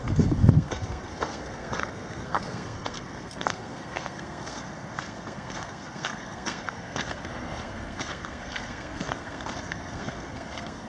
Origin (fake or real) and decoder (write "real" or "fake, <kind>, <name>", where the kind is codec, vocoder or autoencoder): fake, codec, SNAC